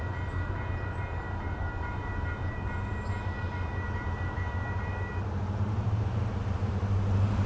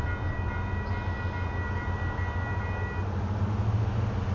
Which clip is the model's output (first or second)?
first